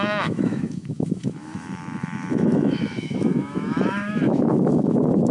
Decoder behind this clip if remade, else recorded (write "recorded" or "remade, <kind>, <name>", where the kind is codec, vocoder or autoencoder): remade, autoencoder, DAC-VAE